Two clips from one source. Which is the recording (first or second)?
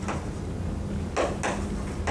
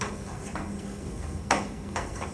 first